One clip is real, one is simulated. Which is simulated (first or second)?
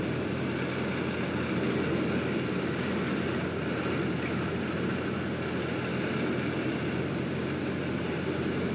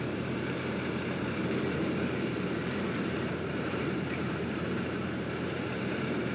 second